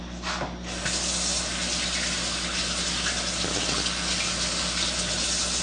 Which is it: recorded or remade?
recorded